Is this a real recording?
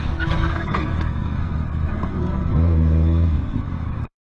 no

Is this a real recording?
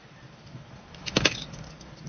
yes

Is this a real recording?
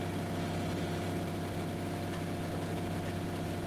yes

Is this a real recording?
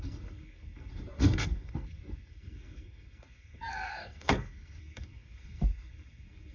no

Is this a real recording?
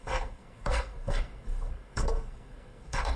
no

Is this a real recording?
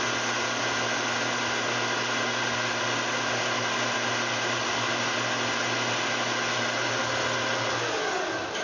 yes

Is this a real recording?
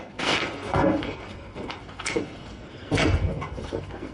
no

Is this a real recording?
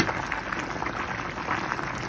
yes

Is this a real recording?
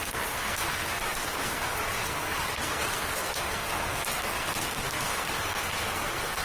no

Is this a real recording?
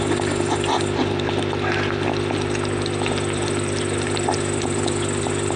yes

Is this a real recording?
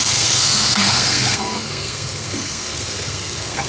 no